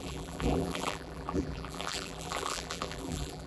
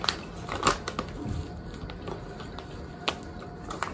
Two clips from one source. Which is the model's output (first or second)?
first